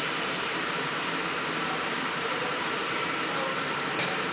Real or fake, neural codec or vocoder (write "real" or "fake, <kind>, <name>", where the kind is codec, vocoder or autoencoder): fake, vocoder, BigVGAN v2